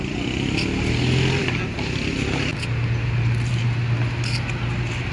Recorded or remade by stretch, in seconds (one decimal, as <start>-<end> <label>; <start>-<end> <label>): 0.0-5.1 recorded